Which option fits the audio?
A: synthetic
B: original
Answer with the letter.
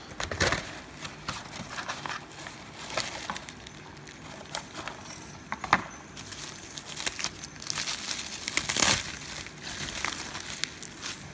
B